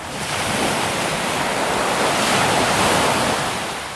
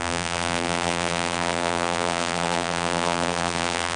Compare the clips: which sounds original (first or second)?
first